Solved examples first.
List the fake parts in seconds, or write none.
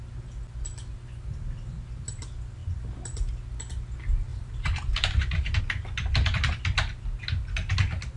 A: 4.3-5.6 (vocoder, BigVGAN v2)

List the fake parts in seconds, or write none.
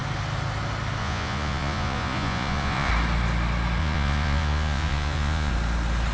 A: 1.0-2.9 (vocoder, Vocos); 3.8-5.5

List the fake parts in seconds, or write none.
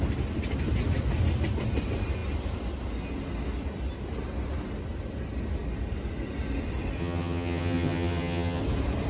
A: 7.0-8.6 (vocoder, HiFi-GAN)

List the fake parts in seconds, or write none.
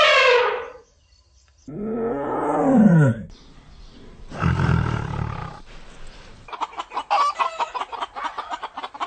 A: 0.0-5.4 (vocoder, BigVGAN v2); 6.8-9.1